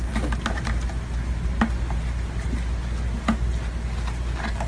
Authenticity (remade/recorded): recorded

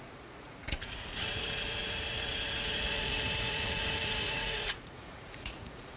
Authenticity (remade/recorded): remade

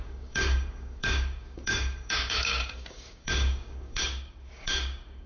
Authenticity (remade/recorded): remade